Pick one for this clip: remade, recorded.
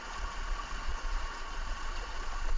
remade